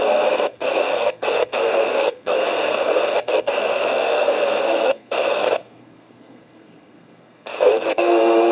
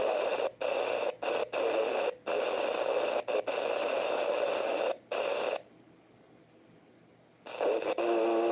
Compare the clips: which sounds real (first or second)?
second